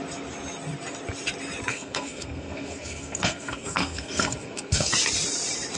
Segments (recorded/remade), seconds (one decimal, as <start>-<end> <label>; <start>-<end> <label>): 0.0-1.7 recorded; 1.7-4.9 remade; 4.9-5.8 recorded